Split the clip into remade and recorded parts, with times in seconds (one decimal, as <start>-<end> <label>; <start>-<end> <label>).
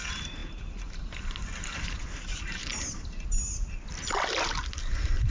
0.0-5.3 recorded